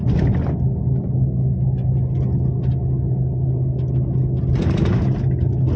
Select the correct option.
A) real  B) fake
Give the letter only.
A